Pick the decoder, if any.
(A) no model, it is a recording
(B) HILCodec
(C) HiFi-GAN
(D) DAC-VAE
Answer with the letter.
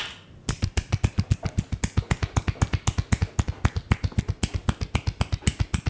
A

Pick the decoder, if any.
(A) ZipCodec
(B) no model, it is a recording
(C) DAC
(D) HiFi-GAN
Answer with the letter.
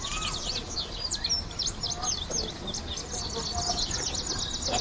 B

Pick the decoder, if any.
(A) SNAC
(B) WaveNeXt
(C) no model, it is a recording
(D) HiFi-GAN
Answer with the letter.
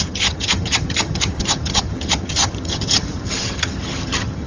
D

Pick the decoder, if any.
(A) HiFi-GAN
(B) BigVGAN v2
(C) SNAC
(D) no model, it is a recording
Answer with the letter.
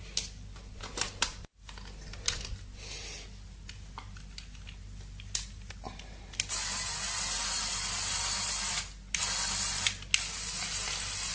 D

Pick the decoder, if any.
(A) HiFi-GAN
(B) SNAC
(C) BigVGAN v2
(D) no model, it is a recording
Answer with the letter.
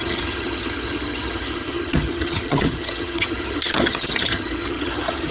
A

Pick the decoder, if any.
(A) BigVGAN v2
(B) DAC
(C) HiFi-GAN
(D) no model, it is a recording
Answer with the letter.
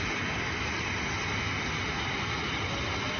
D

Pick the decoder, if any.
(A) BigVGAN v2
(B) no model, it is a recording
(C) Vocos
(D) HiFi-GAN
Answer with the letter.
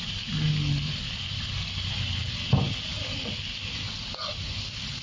B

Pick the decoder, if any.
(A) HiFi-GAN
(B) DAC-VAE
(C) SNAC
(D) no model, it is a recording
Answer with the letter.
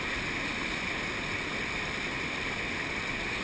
D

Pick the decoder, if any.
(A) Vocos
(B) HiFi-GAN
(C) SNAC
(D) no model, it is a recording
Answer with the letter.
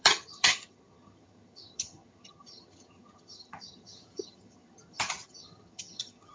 B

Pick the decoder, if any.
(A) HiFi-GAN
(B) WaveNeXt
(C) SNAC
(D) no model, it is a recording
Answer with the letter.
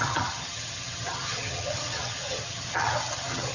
A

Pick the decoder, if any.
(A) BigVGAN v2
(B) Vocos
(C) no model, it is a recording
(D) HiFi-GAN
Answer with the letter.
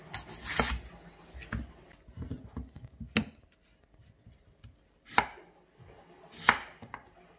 C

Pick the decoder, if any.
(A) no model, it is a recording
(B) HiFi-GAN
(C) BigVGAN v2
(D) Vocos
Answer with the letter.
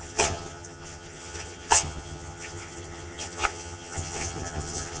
B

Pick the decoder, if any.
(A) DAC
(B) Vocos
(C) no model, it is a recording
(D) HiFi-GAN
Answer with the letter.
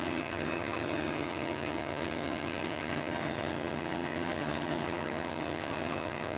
D